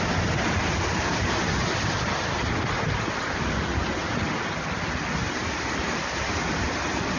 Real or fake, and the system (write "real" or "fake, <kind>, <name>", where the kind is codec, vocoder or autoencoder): real